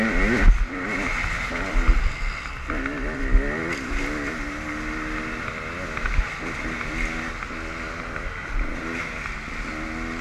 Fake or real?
real